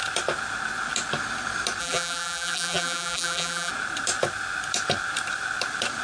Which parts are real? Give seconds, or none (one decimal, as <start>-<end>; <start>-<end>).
0.0-1.8; 3.7-6.0